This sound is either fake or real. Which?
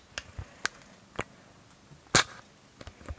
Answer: real